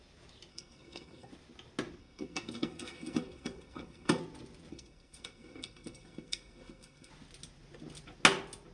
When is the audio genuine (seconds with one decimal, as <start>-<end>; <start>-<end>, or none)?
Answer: 0.0-0.5; 1.3-2.0; 4.2-4.7; 7.1-8.7